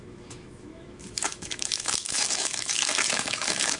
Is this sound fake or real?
fake